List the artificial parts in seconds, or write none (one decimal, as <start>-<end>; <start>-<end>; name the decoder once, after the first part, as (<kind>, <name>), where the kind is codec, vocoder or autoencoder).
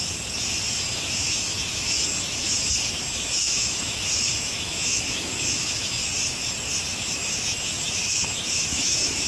0.9-6.1 (autoencoder, DAC-VAE); 6.9-9.3